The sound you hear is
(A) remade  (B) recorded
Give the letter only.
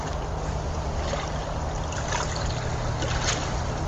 B